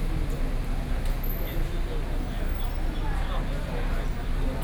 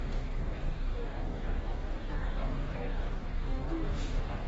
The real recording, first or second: first